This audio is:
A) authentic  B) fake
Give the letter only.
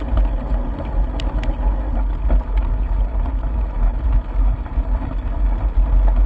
A